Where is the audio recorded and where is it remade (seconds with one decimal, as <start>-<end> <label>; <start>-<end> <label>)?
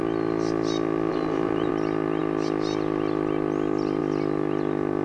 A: 0.0-1.1 recorded; 1.1-1.7 remade; 1.7-5.0 recorded